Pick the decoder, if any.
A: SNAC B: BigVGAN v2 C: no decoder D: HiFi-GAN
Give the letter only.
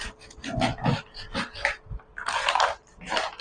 C